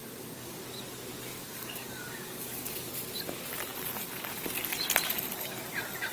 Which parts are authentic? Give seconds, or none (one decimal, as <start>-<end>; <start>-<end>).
0.6-1.3; 2.9-6.1